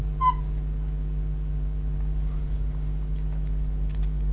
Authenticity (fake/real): real